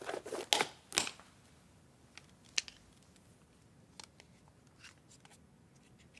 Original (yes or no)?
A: yes